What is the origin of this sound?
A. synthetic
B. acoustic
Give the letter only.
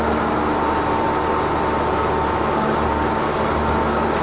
B